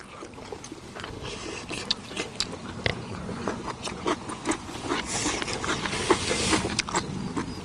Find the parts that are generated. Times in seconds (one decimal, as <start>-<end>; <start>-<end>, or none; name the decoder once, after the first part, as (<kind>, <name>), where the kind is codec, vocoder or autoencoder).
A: 2.9-5.1 (vocoder, Vocos)

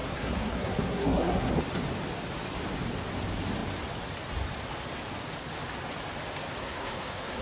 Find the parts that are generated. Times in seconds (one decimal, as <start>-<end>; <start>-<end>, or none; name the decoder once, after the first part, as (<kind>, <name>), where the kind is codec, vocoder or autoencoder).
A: 0.0-1.5 (codec, SNAC); 6.6-7.4